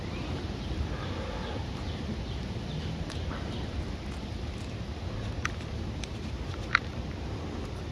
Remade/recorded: recorded